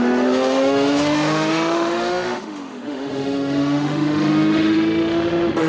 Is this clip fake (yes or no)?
yes